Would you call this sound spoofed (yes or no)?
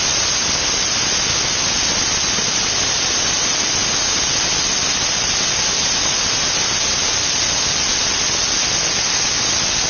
no